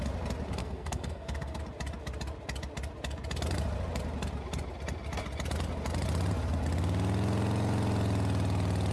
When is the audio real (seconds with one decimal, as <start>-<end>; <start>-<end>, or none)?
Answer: 0.0-0.6; 1.6-8.9